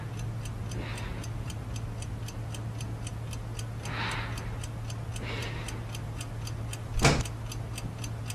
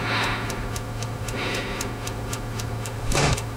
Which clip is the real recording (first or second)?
first